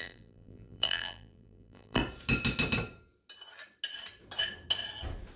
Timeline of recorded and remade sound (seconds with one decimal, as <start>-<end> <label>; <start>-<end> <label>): 0.0-2.0 remade; 2.0-5.4 recorded